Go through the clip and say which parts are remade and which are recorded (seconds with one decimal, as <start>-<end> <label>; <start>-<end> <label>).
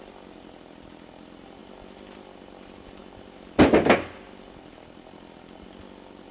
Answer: 0.0-6.3 recorded